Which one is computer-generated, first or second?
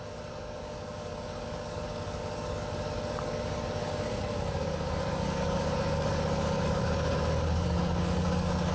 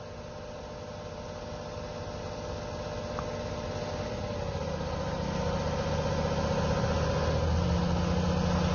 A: first